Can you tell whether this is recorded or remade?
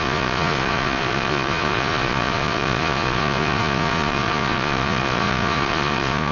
remade